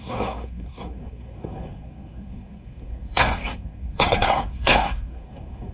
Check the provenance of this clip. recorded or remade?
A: remade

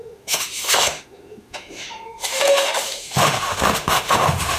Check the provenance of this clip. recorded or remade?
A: remade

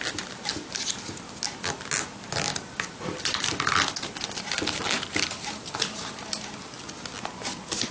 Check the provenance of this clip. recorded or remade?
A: recorded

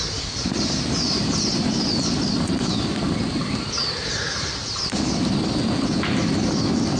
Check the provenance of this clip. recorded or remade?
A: recorded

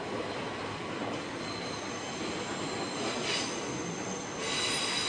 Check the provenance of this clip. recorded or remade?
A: recorded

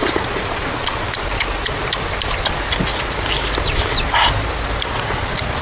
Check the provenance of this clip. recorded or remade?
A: recorded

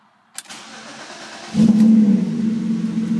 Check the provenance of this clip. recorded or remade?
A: recorded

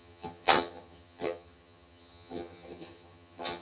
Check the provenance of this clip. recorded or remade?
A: remade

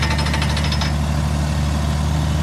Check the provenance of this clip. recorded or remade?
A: recorded